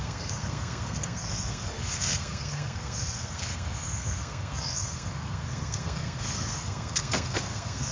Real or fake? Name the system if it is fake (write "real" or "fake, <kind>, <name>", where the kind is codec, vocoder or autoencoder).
fake, codec, SNAC